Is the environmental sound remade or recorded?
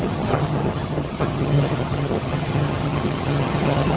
remade